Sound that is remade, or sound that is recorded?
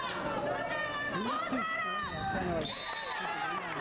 recorded